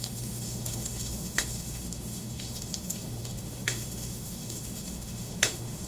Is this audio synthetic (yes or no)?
yes